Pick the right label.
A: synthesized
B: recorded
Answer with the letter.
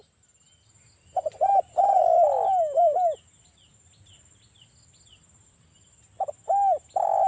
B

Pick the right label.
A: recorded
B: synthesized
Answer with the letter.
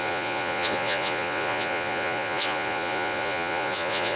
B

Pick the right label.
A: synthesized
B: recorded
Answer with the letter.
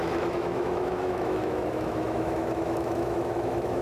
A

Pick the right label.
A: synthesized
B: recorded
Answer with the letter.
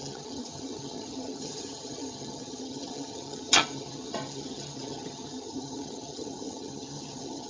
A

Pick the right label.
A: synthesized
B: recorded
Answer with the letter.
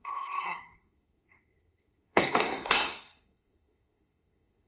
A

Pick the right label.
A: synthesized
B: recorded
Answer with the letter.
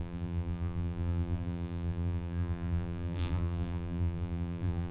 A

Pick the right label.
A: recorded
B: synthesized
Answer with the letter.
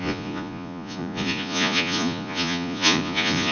B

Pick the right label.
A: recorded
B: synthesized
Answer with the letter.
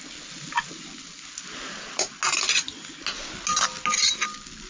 A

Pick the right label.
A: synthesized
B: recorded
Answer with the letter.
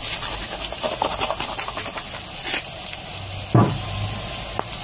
B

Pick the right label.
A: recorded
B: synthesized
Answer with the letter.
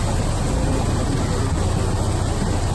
A